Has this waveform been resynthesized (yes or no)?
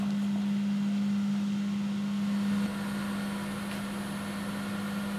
no